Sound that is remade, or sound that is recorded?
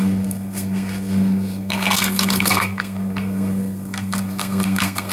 remade